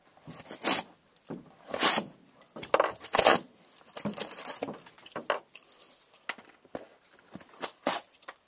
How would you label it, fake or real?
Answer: real